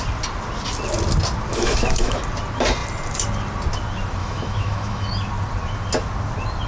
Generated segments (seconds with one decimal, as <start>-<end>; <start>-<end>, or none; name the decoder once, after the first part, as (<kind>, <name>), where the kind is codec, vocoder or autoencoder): 1.5-2.2 (autoencoder, DAC-VAE); 4.2-5.1

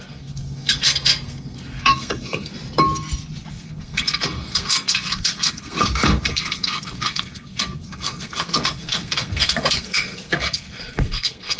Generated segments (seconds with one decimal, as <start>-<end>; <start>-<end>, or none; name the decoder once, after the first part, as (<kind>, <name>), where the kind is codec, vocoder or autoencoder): 0.0-2.5 (codec, SNAC); 3.5-11.6

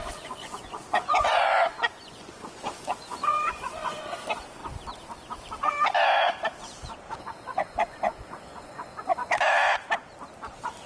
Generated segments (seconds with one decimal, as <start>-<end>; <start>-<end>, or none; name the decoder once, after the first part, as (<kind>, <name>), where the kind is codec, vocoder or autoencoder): 0.0-4.6 (vocoder, Vocos); 7.2-9.2

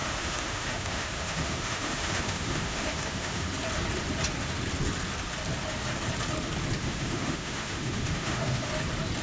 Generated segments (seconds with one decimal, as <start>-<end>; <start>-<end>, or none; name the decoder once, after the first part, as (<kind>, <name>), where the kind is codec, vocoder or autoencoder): 0.0-3.5 (autoencoder, DAC-VAE); 6.8-8.7

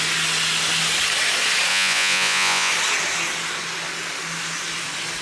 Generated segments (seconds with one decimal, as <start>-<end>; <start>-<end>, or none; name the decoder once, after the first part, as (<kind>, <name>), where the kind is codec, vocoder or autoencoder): 1.7-2.7 (vocoder, Vocos)

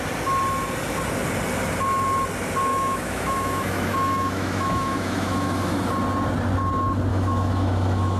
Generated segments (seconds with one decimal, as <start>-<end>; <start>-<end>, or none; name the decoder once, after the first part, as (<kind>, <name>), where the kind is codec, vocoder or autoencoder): 2.7-5.7 (autoencoder, DAC-VAE); 7.1-8.2

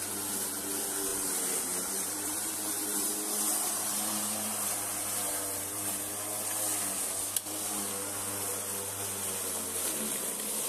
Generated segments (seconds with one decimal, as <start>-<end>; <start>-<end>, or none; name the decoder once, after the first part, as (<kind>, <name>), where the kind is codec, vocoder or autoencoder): 1.1-5.9 (vocoder, BigVGAN v2)